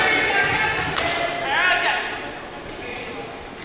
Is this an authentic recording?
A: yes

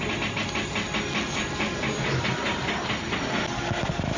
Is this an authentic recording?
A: yes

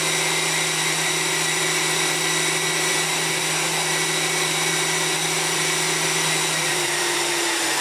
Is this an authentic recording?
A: no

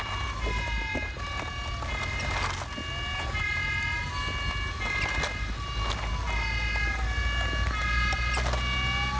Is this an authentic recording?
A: yes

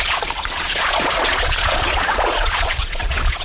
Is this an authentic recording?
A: no